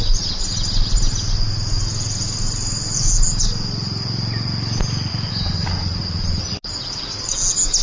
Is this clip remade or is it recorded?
recorded